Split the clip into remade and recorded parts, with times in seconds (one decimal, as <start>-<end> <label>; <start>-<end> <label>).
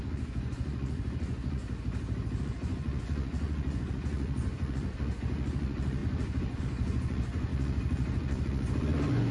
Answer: 0.0-1.6 remade; 1.6-2.4 recorded; 2.4-9.3 remade